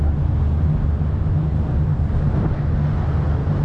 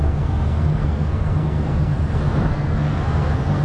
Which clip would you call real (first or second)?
first